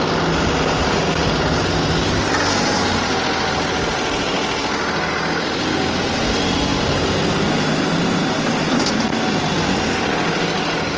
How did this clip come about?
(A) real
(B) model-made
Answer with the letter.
A